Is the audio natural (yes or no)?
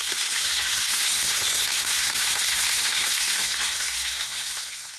no